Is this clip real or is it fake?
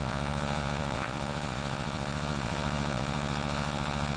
fake